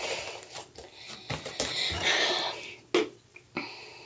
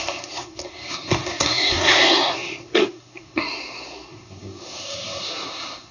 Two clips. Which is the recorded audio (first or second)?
first